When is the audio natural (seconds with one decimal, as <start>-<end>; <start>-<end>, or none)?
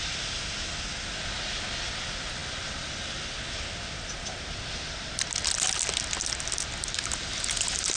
0.0-8.0